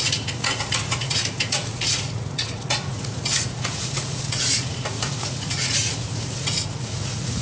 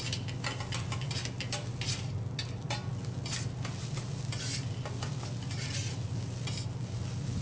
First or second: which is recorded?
second